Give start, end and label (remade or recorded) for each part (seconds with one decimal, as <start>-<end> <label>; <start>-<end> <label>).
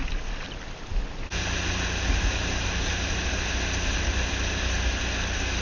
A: 0.0-5.6 recorded